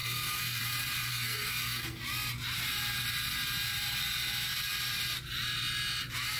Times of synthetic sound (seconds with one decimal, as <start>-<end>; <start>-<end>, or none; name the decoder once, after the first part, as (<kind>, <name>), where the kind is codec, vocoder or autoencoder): 0.0-0.6 (codec, SNAC); 1.1-2.0